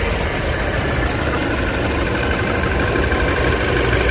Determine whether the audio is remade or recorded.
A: recorded